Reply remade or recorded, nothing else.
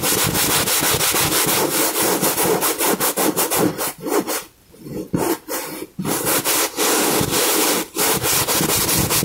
recorded